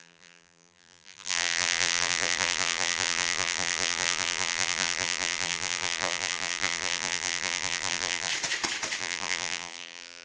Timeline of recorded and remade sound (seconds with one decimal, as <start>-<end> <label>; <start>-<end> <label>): 0.0-8.3 remade; 8.3-9.0 recorded; 9.0-10.2 remade